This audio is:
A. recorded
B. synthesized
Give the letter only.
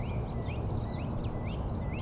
A